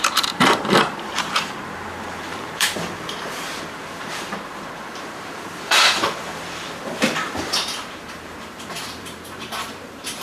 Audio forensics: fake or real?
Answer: fake